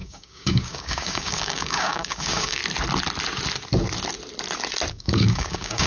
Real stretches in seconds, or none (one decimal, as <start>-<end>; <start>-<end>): 2.6-4.9